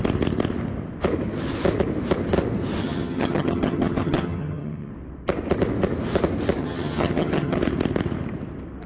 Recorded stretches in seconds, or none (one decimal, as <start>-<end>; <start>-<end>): 0.0-2.8; 4.9-6.6; 7.6-8.9